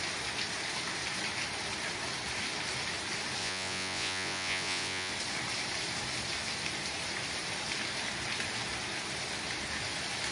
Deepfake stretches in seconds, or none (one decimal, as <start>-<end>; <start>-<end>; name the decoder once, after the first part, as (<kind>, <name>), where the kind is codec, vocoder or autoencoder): 3.4-5.1 (vocoder, Vocos)